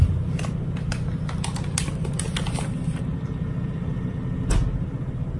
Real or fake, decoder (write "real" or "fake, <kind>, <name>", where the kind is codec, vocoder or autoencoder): real